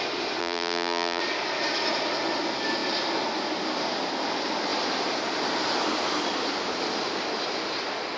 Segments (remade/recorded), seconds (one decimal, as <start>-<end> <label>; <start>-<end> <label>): 0.0-0.4 recorded; 0.4-1.2 remade; 1.2-8.2 recorded